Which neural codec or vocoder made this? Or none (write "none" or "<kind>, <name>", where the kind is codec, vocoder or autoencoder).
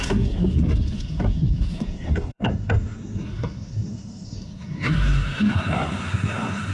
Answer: codec, SNAC